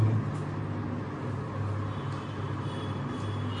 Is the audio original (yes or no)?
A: yes